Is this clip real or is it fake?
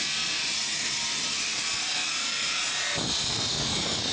real